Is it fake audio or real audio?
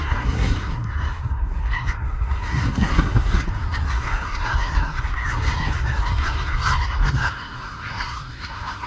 fake